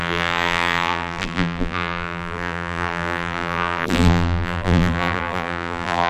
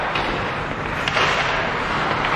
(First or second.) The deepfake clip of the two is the first